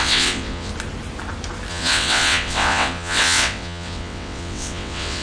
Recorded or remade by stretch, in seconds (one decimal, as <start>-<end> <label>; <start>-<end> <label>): 0.0-0.7 remade; 0.7-1.7 recorded; 1.7-5.2 remade